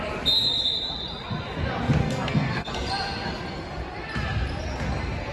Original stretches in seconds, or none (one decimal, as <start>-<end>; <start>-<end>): 0.0-2.0; 2.7-5.3